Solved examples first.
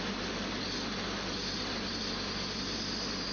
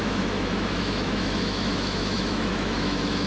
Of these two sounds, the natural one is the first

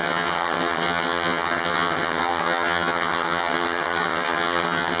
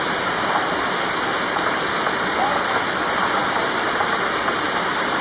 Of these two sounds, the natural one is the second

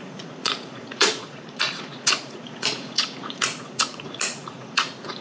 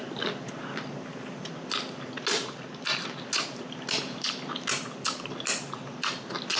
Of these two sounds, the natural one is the second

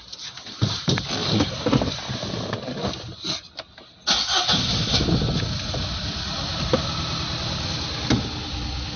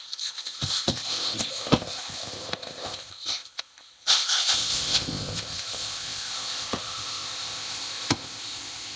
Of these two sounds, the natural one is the first